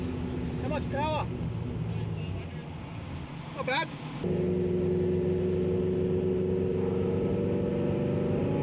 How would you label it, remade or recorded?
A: recorded